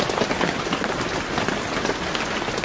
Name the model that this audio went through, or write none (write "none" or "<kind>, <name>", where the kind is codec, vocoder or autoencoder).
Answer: none